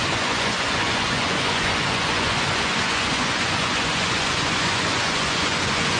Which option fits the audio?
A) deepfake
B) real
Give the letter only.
A